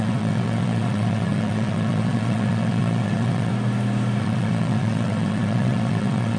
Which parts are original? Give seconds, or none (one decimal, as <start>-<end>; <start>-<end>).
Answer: 3.5-4.2